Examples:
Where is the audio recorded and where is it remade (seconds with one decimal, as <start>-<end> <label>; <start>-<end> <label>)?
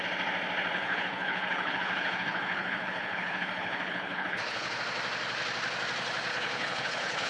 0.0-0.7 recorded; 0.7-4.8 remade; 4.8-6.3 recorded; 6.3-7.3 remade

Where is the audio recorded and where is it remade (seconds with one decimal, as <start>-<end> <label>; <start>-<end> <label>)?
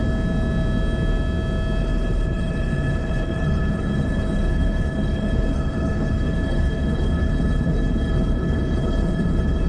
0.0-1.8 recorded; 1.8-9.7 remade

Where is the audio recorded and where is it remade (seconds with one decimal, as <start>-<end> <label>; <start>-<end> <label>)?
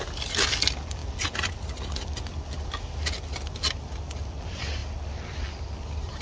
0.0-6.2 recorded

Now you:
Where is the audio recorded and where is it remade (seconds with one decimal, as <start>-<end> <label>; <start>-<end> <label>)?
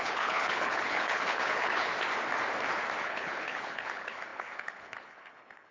0.0-1.9 remade; 1.9-3.0 recorded; 3.0-5.7 remade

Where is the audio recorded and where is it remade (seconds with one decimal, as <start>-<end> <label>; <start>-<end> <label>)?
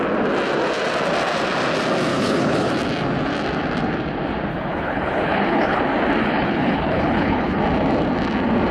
0.0-2.1 recorded; 2.1-2.7 remade; 2.7-4.5 recorded; 4.5-5.8 remade; 5.8-6.2 recorded; 6.2-7.6 remade; 7.6-8.7 recorded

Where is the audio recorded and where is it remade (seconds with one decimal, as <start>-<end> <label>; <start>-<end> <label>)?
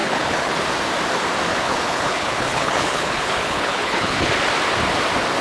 0.0-0.5 remade; 0.5-1.5 recorded; 1.5-4.3 remade; 4.3-5.4 recorded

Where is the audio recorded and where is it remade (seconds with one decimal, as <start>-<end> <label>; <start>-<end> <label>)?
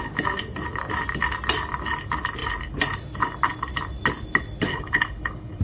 0.0-4.7 recorded; 4.7-5.6 remade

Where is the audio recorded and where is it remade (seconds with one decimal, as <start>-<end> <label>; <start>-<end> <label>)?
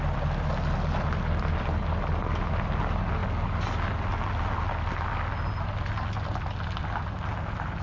0.0-7.8 recorded